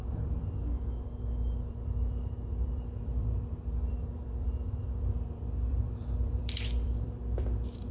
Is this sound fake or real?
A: fake